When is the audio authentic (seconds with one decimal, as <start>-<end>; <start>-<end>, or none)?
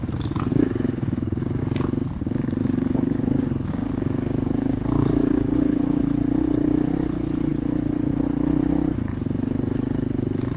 0.0-0.5; 1.6-2.6; 6.0-10.6